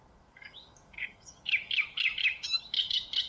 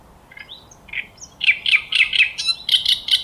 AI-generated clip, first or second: first